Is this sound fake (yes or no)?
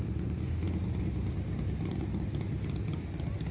no